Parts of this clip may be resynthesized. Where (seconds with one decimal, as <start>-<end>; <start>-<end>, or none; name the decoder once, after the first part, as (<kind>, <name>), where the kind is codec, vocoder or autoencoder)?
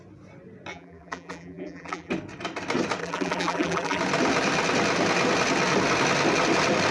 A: 0.7-2.1 (vocoder, BigVGAN v2); 3.0-4.0